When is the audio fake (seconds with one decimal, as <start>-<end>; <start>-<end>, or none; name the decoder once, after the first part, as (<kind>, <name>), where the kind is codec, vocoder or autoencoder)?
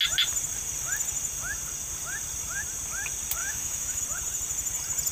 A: 3.4-4.0 (autoencoder, DAC-VAE)